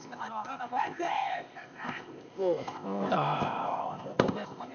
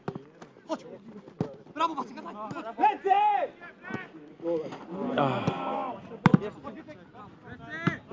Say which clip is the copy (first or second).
first